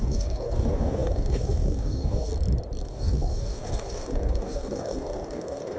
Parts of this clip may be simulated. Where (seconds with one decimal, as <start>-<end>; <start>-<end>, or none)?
0.0-2.3; 2.8-5.8